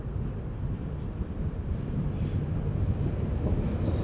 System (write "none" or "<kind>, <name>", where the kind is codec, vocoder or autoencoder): none